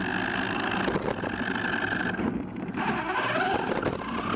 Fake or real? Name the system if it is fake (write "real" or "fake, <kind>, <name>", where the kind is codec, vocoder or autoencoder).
real